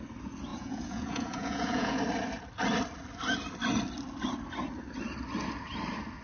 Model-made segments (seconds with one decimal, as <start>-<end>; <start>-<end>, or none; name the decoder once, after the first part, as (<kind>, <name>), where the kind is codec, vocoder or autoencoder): 0.5-2.0 (vocoder, Vocos)